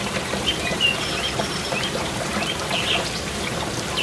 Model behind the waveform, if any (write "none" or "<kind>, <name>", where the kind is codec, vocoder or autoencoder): vocoder, BigVGAN v2